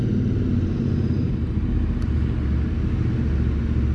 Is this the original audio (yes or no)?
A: yes